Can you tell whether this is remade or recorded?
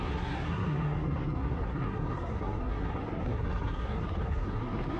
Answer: remade